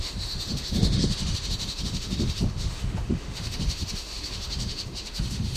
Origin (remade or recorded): remade